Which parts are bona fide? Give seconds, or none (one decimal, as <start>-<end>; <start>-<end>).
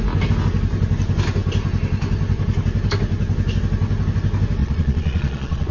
0.0-4.6